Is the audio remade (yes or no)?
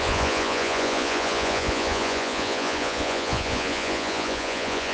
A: yes